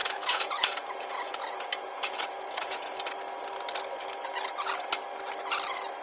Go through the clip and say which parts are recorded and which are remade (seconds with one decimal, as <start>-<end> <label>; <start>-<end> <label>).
0.0-3.0 remade; 3.0-6.0 recorded